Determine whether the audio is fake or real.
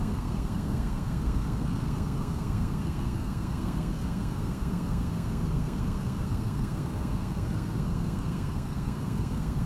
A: fake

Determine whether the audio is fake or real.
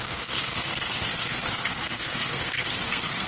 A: fake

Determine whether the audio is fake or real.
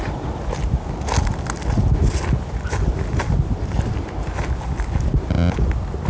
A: real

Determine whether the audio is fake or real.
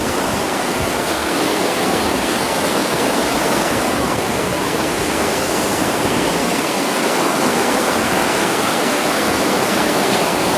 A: fake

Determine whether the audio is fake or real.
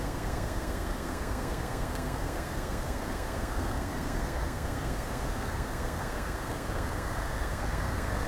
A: fake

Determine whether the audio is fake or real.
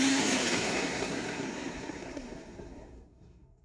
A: fake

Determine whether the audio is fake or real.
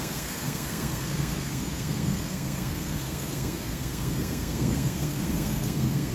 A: fake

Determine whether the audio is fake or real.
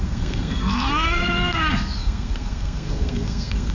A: fake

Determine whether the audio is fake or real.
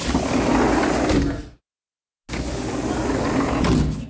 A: real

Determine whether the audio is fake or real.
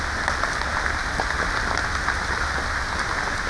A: real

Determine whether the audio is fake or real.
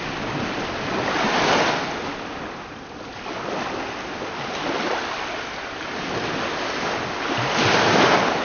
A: real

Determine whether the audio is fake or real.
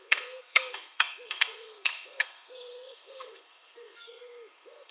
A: fake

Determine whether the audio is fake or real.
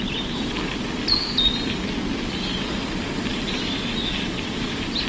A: real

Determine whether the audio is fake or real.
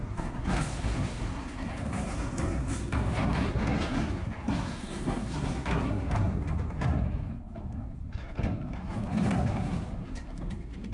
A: fake